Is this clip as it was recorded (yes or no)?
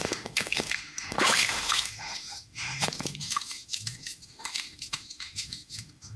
no